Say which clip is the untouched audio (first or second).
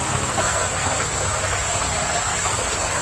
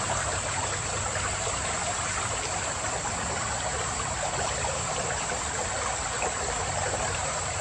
second